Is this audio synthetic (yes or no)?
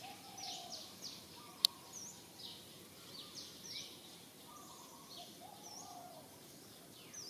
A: no